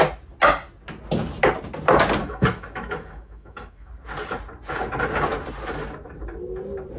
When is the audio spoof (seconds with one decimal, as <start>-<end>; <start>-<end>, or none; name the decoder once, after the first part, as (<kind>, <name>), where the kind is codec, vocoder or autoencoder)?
2.2-3.9 (autoencoder, DAC-VAE)